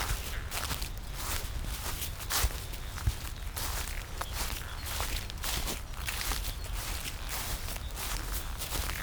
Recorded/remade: recorded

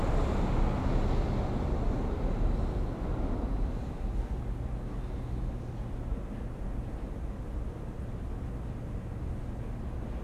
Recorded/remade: recorded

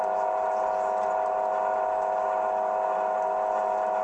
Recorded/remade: recorded